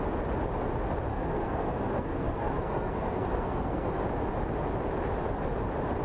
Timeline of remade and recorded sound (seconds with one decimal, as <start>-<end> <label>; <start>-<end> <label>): 0.0-1.1 recorded; 1.1-4.0 remade; 4.0-6.0 recorded